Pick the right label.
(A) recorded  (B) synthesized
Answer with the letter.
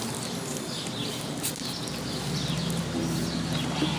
A